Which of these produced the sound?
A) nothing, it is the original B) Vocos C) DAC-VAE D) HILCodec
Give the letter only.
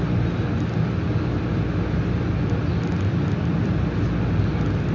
A